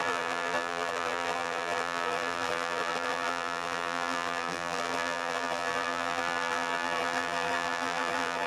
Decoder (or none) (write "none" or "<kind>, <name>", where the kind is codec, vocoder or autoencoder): vocoder, BigVGAN v2